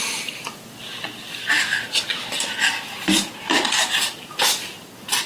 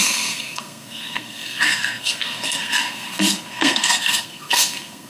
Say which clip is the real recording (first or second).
first